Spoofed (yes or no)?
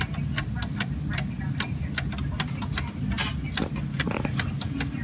no